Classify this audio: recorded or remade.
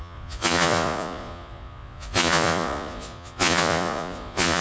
remade